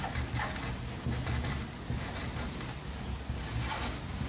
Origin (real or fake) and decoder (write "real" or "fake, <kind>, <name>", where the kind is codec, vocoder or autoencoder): real